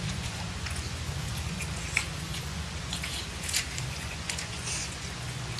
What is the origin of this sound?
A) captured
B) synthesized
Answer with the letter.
B